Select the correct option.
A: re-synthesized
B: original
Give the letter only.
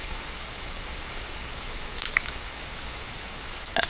A